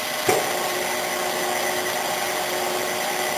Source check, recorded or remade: recorded